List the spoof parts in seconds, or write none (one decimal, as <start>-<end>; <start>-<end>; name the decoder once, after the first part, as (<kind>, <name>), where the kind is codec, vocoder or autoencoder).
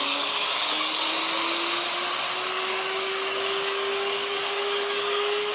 0.0-1.5 (codec, DAC); 2.5-5.5